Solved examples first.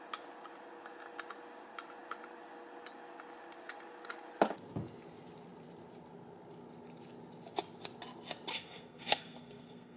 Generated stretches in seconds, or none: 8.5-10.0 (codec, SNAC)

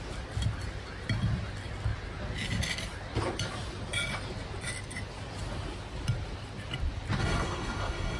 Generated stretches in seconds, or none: 7.2-8.2 (codec, SNAC)